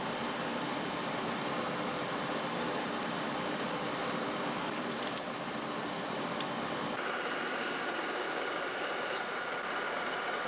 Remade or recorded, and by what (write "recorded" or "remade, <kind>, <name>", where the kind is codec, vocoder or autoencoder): remade, vocoder, BigVGAN v2